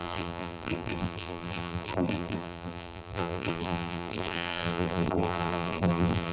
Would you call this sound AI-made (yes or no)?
yes